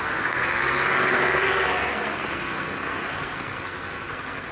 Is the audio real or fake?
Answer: fake